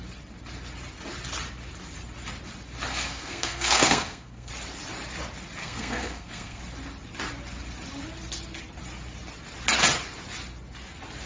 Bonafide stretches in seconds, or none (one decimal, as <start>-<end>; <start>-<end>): 0.0-2.9; 4.5-5.6; 6.6-11.3